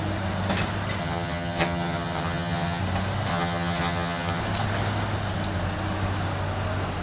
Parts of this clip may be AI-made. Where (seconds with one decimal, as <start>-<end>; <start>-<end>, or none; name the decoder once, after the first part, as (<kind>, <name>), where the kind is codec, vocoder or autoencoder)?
1.0-2.8 (vocoder, HiFi-GAN); 3.3-4.4